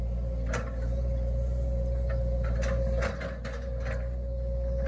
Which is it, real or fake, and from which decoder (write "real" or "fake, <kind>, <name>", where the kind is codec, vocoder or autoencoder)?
real